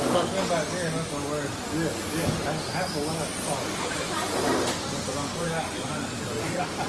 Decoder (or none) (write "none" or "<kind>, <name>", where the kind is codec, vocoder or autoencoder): none